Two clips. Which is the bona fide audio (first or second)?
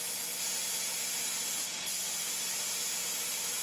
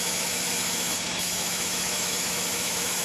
first